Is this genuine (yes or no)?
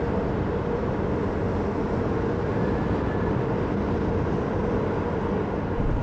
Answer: yes